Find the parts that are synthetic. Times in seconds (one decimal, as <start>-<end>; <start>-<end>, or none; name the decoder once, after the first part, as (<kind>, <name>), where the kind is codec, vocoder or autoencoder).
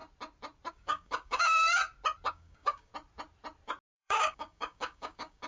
0.7-1.8 (codec, DAC); 2.3-2.9; 3.9-5.5